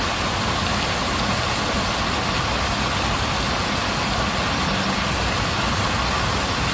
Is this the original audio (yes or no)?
yes